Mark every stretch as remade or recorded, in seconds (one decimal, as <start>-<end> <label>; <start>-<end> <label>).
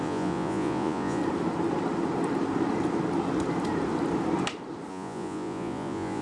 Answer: 0.0-1.2 remade; 1.2-4.9 recorded; 4.9-6.2 remade